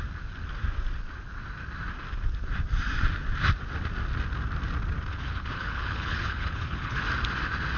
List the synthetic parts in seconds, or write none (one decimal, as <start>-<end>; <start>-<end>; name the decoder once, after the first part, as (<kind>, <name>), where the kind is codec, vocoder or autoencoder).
5.1-7.0 (codec, HILCodec)